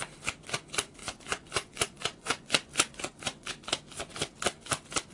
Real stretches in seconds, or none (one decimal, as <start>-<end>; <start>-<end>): 0.0-1.0; 3.5-5.1